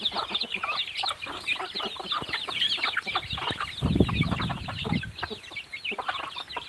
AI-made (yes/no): no